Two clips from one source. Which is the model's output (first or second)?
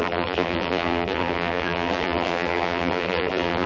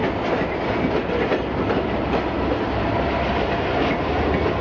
first